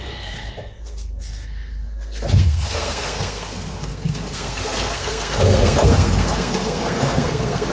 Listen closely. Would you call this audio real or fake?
fake